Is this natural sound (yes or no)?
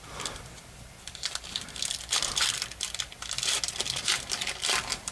yes